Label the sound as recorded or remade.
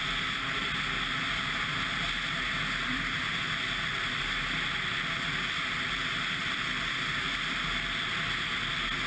recorded